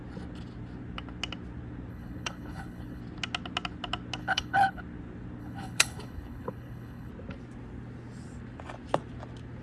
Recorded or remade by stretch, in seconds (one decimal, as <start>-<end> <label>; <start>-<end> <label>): 0.0-1.9 recorded; 1.9-3.0 remade; 3.0-4.2 recorded; 4.2-4.8 remade; 4.8-5.4 recorded; 5.4-7.1 remade; 7.1-9.6 recorded